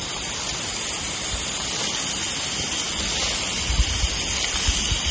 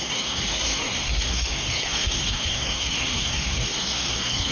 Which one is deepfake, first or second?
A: second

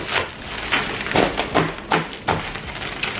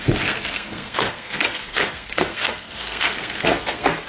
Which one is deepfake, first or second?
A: second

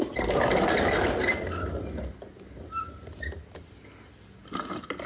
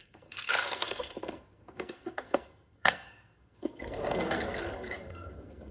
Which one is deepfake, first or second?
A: second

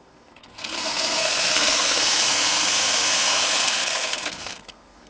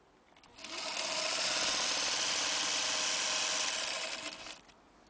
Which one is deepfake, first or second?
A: first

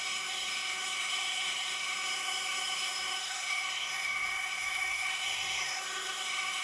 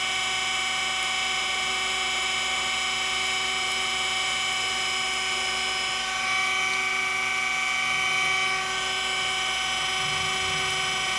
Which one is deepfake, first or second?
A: first